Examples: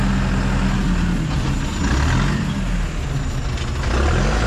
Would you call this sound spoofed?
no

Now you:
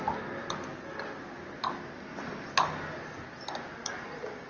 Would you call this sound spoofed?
no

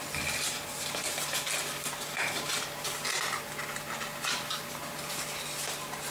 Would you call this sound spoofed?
no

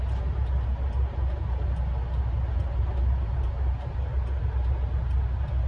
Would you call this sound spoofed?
no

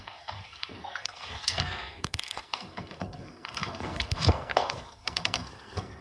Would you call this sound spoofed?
yes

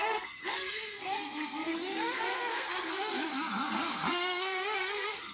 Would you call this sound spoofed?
yes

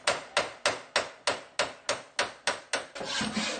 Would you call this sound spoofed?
no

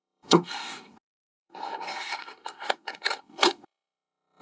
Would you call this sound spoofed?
yes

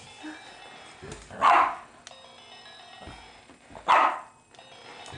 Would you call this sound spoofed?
no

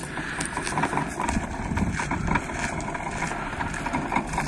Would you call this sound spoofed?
no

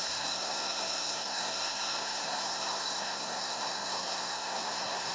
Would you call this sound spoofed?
yes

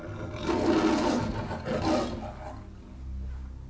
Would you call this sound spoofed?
no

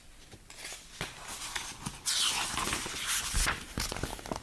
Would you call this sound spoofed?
no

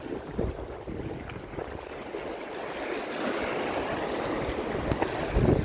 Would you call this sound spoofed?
no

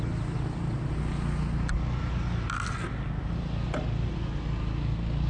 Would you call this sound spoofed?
no